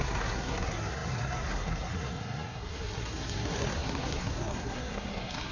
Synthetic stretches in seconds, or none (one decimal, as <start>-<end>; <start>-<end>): 0.0-5.5